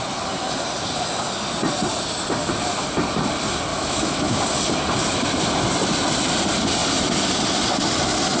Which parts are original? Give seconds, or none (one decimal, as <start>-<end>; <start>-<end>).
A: 0.0-3.7; 4.4-8.4